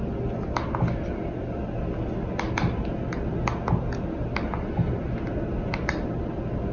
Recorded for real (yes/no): yes